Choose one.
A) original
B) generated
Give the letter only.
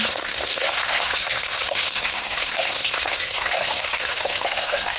B